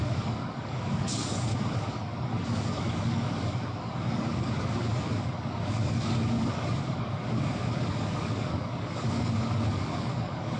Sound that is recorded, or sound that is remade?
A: remade